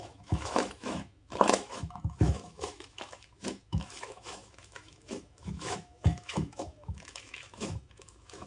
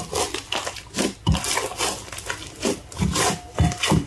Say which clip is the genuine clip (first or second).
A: second